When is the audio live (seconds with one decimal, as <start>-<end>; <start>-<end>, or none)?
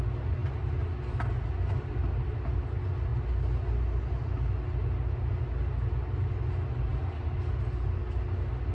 0.0-8.7